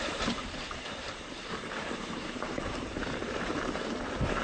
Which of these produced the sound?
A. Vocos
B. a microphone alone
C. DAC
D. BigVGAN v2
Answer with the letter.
D